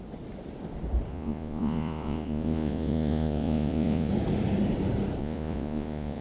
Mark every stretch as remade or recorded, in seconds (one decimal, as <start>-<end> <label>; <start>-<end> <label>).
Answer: 0.0-1.1 recorded; 1.1-4.1 remade; 4.1-5.2 recorded; 5.2-6.2 remade